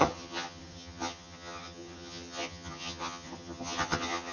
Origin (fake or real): fake